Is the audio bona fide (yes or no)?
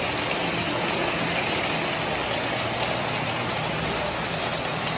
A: yes